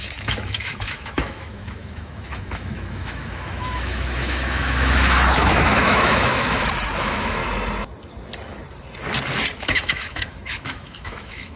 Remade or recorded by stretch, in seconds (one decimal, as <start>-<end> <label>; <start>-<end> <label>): 0.0-7.4 remade; 7.4-9.6 recorded; 9.6-11.6 remade